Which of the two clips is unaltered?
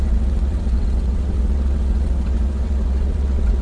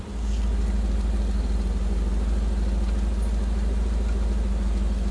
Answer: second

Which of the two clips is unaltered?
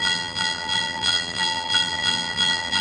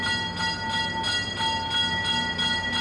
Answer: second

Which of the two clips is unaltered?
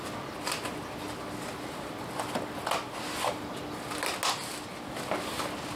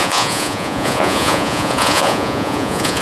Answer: first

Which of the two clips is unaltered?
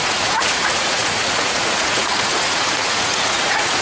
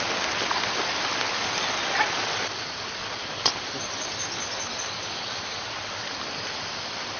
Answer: second